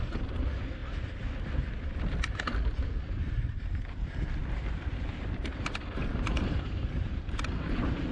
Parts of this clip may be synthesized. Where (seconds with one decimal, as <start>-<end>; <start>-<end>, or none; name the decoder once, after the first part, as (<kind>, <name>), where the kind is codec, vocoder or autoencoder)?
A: 4.4-8.1 (vocoder, BigVGAN v2)